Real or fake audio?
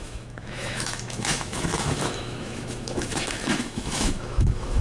fake